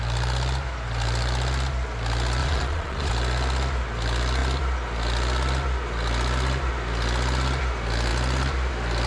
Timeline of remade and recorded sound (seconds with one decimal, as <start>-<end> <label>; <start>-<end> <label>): 0.0-2.4 recorded; 2.4-3.1 remade; 3.1-9.1 recorded